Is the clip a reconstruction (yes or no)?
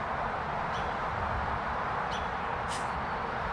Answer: no